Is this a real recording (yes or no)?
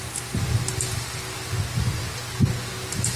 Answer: yes